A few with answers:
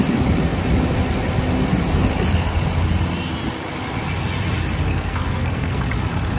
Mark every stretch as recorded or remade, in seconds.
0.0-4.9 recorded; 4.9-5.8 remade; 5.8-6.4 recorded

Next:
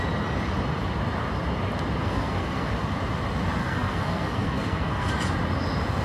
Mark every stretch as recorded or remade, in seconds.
0.0-2.0 recorded; 2.0-2.7 remade; 2.7-3.6 recorded; 3.6-5.1 remade; 5.1-6.0 recorded

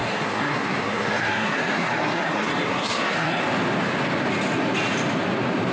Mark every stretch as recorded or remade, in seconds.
0.0-3.4 remade; 3.4-5.7 recorded

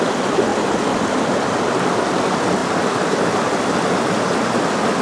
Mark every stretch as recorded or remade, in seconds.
0.0-5.0 recorded

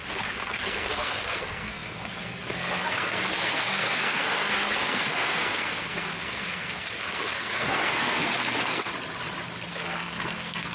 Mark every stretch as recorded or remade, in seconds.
0.0-8.9 remade; 8.9-9.7 recorded; 9.7-10.7 remade